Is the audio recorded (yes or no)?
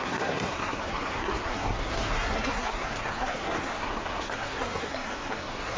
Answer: no